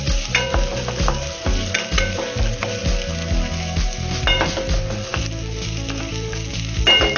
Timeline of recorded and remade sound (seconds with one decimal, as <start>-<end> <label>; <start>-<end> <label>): 0.0-7.2 recorded